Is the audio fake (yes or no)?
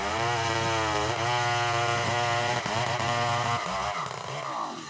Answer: no